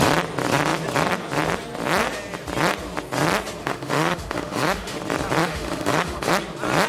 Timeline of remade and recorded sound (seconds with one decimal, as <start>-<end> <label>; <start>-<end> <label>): 0.0-3.6 recorded; 3.6-5.0 remade; 5.0-5.4 recorded; 5.4-6.3 remade; 6.3-6.9 recorded